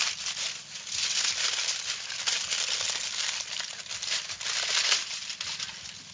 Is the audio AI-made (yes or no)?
no